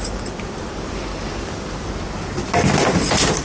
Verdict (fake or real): real